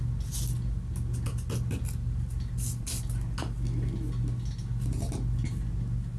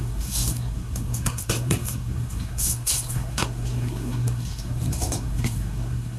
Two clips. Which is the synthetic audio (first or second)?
second